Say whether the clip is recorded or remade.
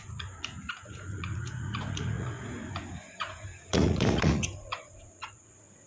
remade